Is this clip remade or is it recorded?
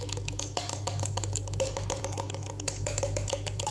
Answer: remade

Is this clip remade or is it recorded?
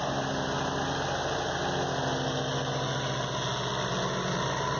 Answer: recorded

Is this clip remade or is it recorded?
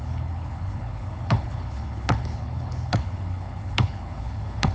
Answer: remade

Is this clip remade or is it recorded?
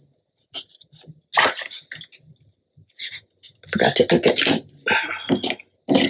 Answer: recorded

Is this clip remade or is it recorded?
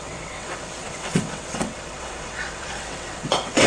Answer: remade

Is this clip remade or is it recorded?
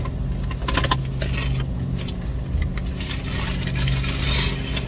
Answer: recorded